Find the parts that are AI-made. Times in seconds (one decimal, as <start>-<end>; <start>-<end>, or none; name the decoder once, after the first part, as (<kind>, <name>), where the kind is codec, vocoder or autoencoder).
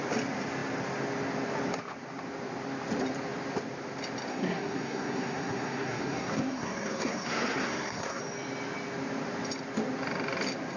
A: 4.3-8.2 (codec, SNAC)